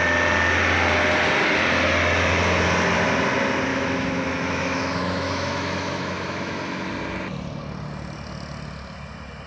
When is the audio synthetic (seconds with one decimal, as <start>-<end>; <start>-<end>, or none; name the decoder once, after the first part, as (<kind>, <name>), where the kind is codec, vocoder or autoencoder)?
3.7-6.9 (autoencoder, DAC-VAE)